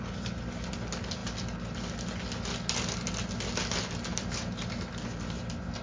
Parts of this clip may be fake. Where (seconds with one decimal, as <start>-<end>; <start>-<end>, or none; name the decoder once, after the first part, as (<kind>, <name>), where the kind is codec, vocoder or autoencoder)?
none